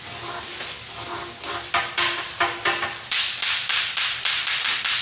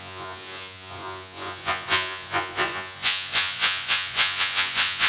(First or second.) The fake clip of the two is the second